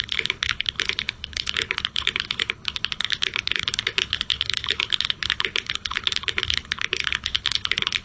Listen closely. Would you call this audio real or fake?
fake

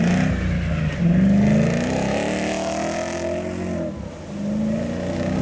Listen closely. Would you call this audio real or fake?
real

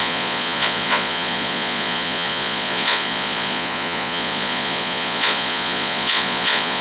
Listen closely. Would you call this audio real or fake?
fake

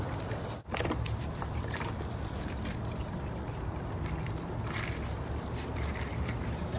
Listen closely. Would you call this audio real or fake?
fake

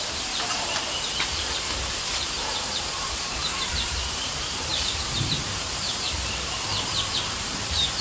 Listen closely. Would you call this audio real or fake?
fake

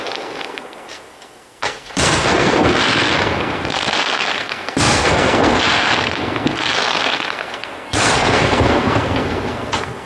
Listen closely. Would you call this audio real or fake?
fake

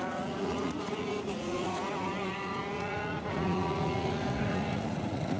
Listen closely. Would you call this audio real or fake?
fake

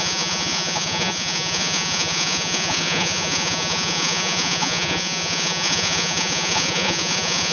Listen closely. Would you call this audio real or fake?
fake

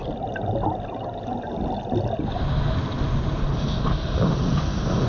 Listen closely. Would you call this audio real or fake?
real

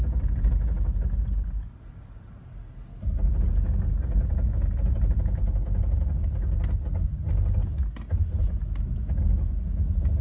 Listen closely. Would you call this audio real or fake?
real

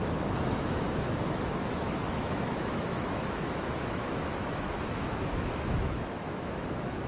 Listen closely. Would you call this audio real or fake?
fake